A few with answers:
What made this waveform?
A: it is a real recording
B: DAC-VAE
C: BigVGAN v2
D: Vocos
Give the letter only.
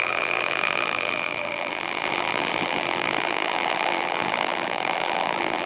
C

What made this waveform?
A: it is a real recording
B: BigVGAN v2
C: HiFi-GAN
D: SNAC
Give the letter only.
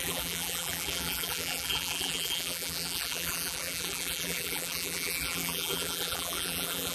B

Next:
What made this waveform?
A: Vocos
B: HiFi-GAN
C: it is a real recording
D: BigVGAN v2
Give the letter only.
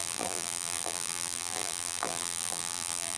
D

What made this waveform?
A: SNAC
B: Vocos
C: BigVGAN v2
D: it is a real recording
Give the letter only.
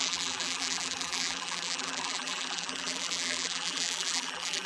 C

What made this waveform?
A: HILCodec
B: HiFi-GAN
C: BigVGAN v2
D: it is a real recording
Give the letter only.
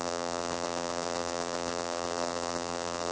C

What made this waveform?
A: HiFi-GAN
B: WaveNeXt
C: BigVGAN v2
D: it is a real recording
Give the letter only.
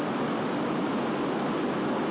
D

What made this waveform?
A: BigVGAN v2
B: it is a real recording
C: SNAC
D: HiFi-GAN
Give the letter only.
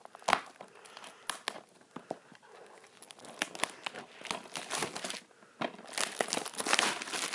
B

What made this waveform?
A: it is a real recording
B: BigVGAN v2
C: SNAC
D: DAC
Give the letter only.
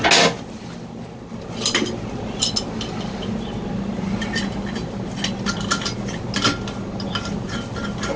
A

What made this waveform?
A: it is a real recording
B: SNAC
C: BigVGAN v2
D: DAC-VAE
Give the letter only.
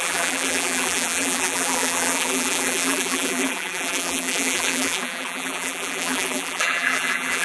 C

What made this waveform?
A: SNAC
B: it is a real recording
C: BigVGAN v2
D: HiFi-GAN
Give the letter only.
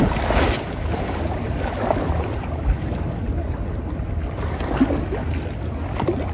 B